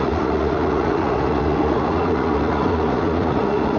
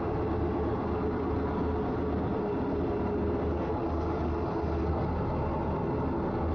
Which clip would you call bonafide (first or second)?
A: second